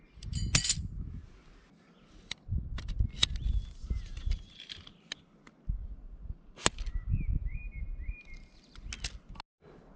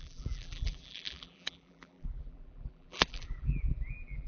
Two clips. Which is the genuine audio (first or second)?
first